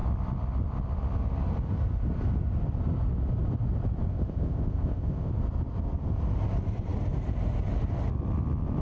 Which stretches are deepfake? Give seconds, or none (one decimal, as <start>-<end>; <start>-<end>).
4.1-5.3